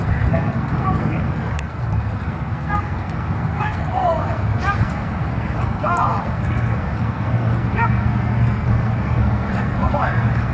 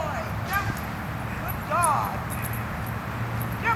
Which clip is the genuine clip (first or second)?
second